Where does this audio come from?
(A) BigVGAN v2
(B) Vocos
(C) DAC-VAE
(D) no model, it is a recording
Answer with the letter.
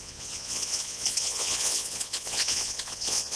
B